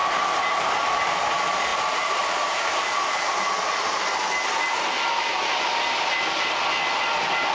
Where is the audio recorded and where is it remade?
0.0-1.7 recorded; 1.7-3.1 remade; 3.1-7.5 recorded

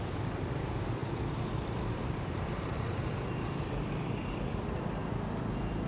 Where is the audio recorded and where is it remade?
0.0-5.0 remade; 5.0-5.9 recorded